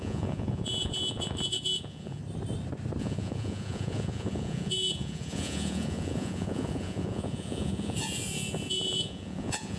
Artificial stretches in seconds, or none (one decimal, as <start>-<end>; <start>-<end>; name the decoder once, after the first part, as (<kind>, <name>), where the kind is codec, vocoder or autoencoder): 0.0-2.2 (vocoder, Vocos); 3.0-9.8